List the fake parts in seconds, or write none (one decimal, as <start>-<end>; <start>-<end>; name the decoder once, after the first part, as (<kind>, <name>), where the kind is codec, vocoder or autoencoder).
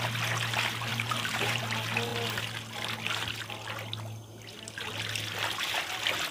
0.9-1.6 (vocoder, BigVGAN v2)